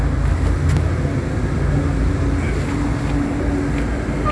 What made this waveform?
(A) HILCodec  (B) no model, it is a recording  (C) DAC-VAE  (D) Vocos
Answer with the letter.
B